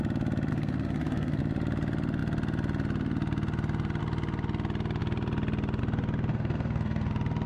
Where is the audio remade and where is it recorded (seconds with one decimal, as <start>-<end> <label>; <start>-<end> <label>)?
0.0-0.5 recorded; 0.5-1.4 remade; 1.4-6.3 recorded; 6.3-7.1 remade; 7.1-7.5 recorded